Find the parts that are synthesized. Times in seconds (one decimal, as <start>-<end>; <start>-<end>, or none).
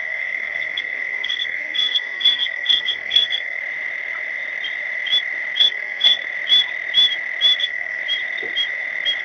0.0-3.6; 5.6-6.2; 7.6-8.0